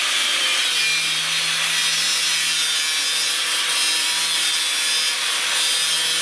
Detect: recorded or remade recorded